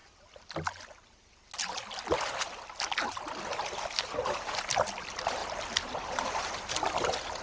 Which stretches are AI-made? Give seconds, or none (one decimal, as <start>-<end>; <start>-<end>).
4.4-7.4